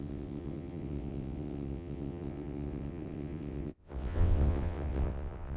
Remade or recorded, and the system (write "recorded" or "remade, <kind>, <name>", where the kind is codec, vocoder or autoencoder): remade, vocoder, WaveNeXt